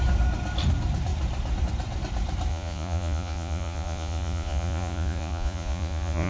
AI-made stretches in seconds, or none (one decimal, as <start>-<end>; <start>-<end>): 2.5-6.3